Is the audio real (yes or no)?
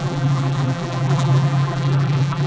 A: no